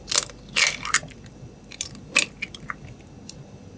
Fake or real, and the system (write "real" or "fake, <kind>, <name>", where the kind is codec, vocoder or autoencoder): real